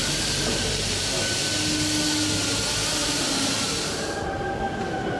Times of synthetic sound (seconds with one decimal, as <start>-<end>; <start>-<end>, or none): 0.0-1.2; 3.0-4.8